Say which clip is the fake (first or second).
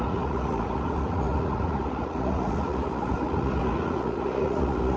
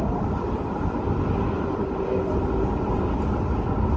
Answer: first